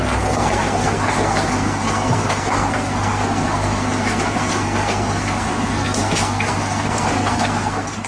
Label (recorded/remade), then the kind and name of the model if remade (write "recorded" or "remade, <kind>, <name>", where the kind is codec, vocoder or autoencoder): remade, codec, SNAC